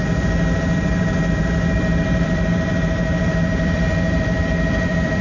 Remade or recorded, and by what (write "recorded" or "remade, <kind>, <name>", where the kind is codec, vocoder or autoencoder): remade, vocoder, BigVGAN v2